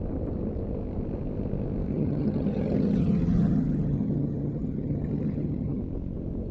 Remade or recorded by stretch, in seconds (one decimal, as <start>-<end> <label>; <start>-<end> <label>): 0.0-1.9 recorded; 1.9-5.8 remade; 5.8-6.5 recorded